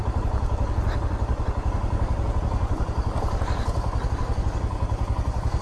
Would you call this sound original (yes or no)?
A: yes